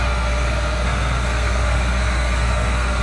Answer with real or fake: fake